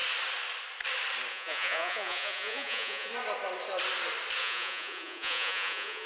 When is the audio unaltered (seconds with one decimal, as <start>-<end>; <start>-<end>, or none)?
0.0-1.3; 3.1-4.4